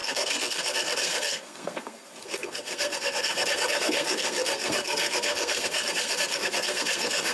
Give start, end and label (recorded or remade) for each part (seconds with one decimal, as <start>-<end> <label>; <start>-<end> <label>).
0.0-7.3 remade